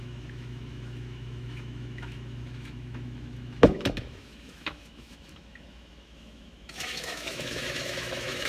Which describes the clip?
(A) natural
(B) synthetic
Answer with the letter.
B